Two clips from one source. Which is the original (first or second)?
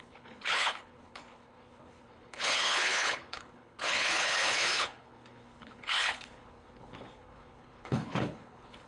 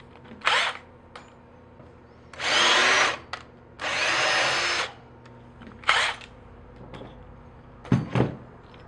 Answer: second